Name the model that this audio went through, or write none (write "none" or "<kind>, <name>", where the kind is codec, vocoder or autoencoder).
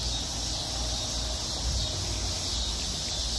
none